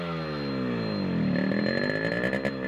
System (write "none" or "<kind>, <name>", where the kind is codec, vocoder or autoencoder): none